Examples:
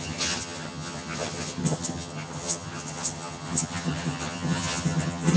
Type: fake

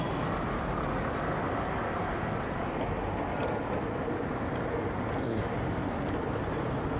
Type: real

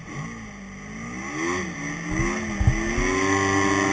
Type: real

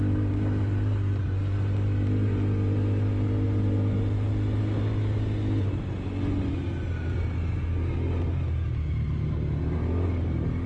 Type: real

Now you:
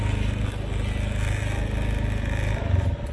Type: real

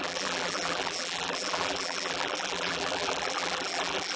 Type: fake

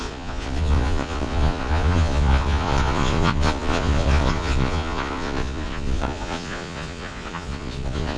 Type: fake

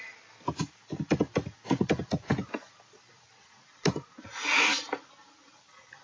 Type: real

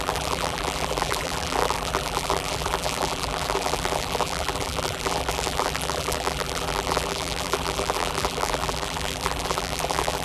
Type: fake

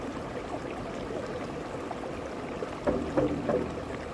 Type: real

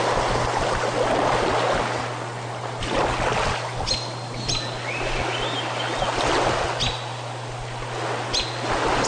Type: real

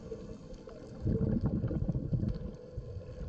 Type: real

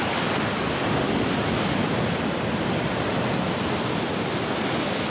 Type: real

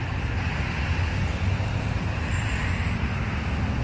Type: real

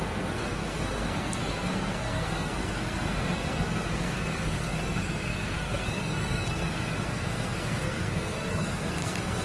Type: fake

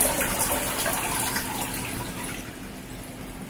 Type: real